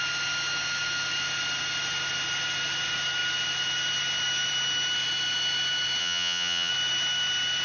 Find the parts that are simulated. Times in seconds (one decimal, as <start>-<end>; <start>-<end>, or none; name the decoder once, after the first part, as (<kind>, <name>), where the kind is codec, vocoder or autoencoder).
6.0-6.7 (vocoder, HiFi-GAN)